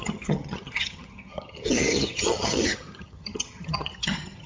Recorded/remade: remade